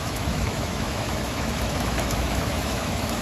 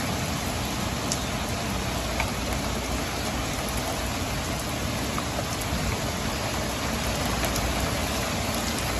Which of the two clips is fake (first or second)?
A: first